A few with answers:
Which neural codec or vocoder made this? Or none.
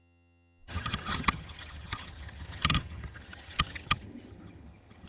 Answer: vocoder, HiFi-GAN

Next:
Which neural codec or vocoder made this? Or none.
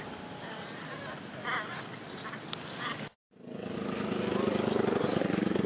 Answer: none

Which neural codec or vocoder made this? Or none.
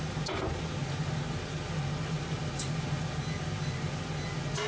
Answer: none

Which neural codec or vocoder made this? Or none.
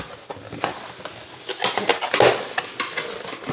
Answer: none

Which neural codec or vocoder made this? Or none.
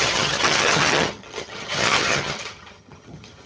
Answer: vocoder, HiFi-GAN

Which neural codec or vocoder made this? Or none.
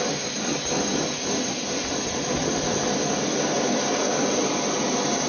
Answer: none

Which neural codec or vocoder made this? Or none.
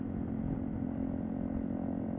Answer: none